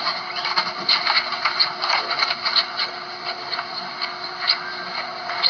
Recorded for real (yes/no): yes